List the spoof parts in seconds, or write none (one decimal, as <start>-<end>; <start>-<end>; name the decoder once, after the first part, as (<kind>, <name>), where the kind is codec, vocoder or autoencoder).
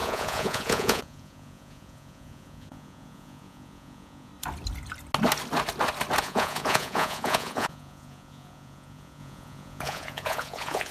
0.0-4.3 (vocoder, Vocos); 6.2-10.9